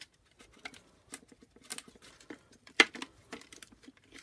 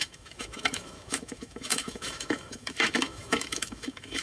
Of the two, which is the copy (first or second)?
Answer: second